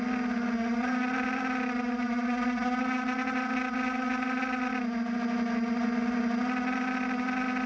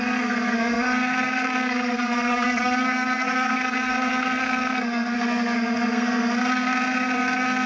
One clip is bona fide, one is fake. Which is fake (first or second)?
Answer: second